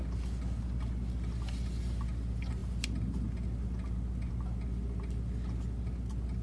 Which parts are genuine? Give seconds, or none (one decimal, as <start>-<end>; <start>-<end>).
0.0-6.4